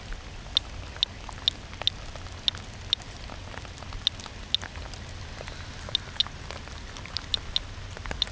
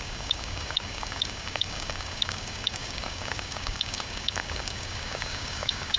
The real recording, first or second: first